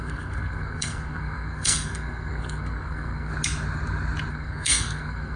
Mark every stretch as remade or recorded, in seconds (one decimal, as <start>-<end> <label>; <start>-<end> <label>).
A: 0.0-3.3 remade; 3.3-4.3 recorded; 4.3-5.4 remade